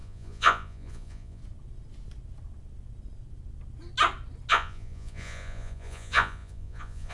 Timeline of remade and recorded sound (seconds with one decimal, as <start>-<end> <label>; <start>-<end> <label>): 0.0-1.4 remade; 1.4-4.5 recorded; 4.5-7.1 remade